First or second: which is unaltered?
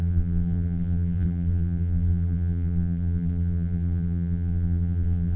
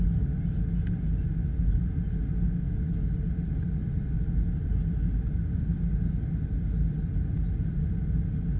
second